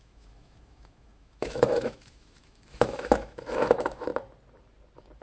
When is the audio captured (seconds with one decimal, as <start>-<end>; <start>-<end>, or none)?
4.1-5.2